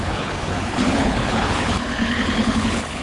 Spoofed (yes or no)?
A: yes